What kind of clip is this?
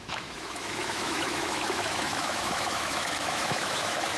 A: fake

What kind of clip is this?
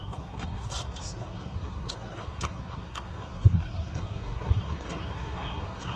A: fake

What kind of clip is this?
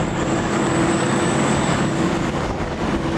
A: fake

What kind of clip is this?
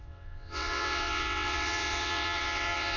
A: fake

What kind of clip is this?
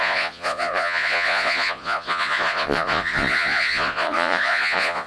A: fake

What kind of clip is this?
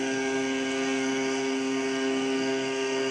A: fake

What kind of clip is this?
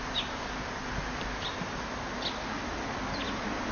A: real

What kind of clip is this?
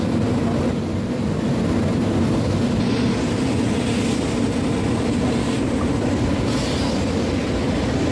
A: real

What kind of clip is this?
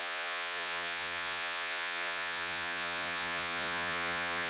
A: fake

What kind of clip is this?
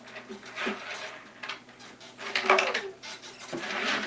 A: real